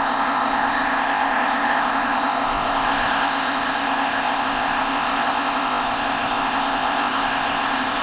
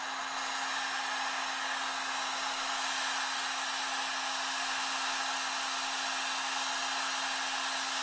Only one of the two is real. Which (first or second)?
second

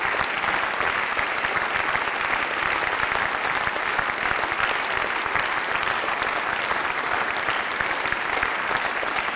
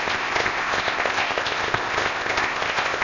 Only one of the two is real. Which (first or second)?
first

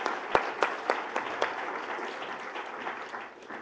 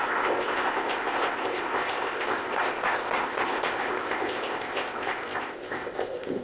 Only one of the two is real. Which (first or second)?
first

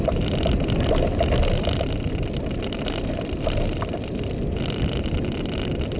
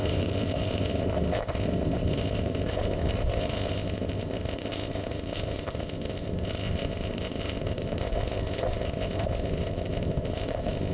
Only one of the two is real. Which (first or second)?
first